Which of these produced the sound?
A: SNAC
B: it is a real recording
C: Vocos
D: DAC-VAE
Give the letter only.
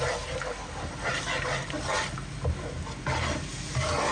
B